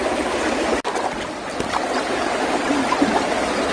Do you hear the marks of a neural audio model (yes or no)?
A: no